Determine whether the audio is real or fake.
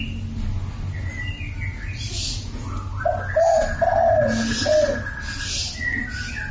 real